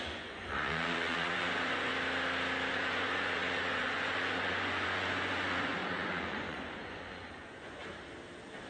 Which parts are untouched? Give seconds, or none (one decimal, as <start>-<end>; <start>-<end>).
1.9-2.7; 7.8-8.7

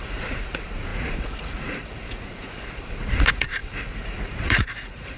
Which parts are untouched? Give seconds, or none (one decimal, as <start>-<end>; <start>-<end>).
none

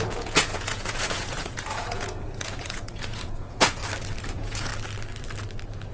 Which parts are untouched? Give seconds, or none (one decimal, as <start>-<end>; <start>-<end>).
3.8-4.3; 4.7-5.9

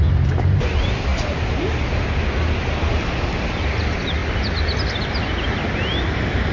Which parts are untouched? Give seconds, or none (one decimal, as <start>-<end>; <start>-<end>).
0.0-6.5